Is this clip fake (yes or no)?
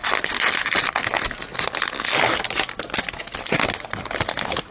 no